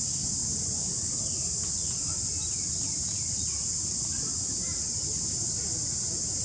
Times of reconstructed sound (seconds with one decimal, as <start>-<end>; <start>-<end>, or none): none